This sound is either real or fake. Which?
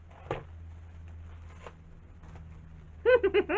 real